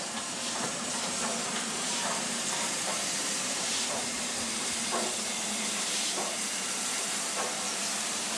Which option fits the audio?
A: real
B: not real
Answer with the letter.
B